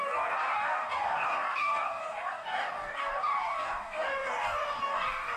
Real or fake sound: fake